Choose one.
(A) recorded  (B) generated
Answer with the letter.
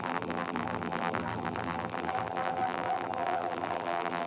B